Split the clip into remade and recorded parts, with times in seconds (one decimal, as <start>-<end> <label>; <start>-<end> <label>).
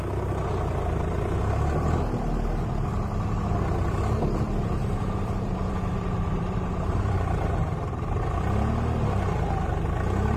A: 0.0-4.8 recorded; 4.8-8.2 remade; 8.2-10.4 recorded